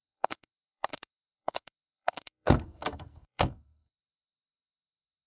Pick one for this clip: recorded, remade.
remade